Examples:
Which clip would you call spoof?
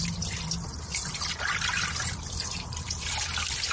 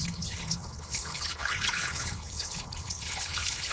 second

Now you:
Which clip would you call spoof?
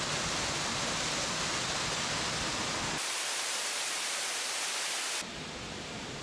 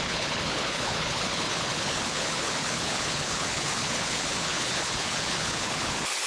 second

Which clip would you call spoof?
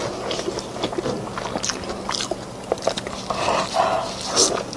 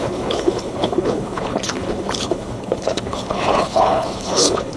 second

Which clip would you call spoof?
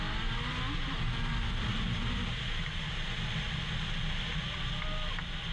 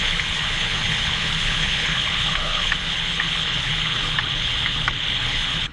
second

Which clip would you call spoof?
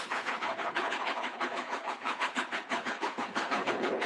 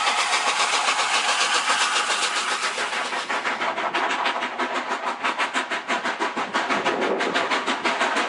first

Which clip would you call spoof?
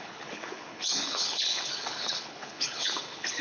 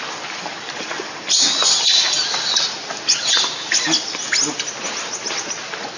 first